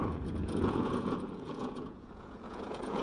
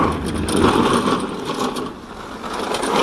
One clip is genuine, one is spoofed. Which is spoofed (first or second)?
first